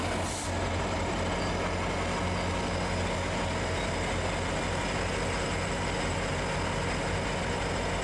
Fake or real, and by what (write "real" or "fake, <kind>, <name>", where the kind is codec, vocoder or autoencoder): real